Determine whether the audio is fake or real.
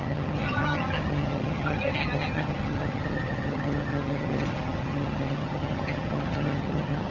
fake